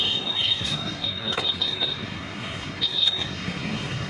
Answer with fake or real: fake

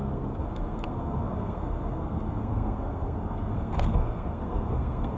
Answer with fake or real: fake